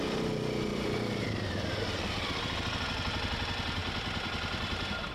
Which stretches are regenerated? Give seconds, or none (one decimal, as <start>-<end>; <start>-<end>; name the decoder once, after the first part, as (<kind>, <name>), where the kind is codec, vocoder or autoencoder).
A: 0.7-1.5 (vocoder, BigVGAN v2); 3.8-4.3

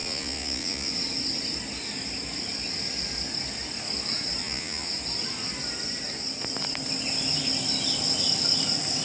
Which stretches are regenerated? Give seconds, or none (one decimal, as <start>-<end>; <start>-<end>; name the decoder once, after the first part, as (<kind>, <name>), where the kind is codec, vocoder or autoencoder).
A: 0.0-0.9 (vocoder, Vocos); 4.4-4.9

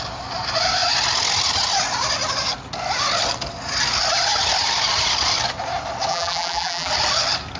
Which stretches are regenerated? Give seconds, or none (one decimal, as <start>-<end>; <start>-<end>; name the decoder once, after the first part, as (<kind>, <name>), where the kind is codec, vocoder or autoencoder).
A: 6.1-6.9 (vocoder, BigVGAN v2)

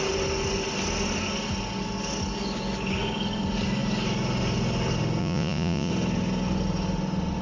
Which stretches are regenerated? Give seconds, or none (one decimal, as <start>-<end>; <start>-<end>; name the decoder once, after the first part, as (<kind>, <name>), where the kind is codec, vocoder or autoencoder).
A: 5.2-5.9 (vocoder, Vocos)

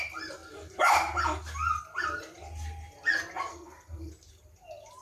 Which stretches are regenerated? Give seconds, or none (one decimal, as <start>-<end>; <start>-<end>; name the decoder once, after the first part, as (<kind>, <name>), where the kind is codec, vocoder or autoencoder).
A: 3.5-4.1 (codec, SNAC)